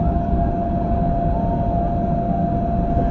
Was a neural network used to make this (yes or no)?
no